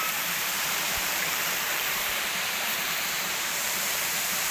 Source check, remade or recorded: remade